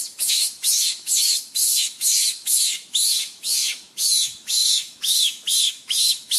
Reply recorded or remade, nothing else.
remade